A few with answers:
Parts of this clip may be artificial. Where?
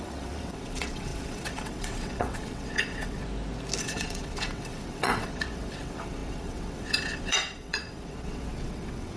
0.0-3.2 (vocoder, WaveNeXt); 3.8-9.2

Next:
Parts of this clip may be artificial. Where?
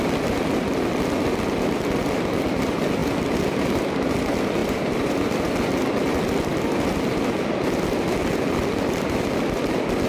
4.6-5.3 (vocoder, BigVGAN v2)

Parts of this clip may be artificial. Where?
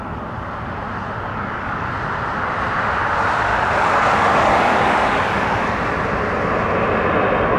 1.3-1.9 (codec, DAC); 3.5-5.8